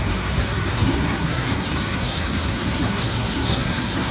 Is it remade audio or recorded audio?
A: remade